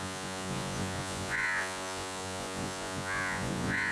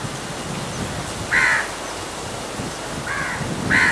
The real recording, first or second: second